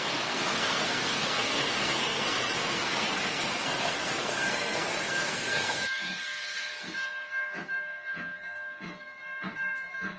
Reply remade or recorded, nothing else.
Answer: remade